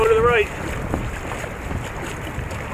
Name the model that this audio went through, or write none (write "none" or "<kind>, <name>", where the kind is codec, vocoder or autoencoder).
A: none